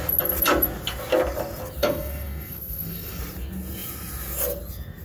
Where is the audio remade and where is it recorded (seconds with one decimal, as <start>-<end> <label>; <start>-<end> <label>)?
0.0-1.8 recorded; 1.8-3.2 remade; 3.2-5.0 recorded